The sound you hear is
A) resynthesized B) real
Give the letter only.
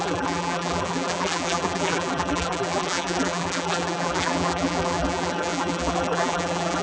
A